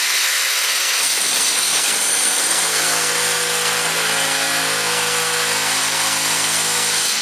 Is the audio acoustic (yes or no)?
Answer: no